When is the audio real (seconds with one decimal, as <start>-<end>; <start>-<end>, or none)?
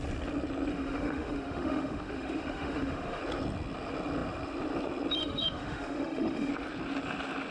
0.0-0.7; 3.2-5.2; 6.5-7.5